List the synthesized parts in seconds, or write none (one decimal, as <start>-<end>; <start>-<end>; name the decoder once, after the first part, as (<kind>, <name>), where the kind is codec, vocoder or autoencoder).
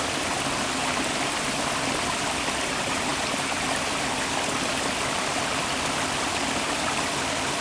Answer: none